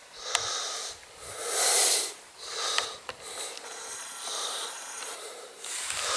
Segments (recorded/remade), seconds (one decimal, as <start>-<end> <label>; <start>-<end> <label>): 0.0-3.7 recorded; 3.7-6.2 remade